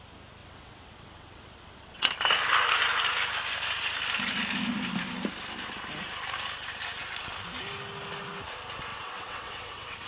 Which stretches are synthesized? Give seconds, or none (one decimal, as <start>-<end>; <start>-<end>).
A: 0.4-2.1; 8.9-10.1